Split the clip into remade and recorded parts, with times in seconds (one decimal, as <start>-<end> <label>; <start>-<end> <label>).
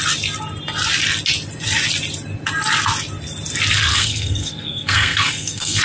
0.0-3.9 recorded; 3.9-5.8 remade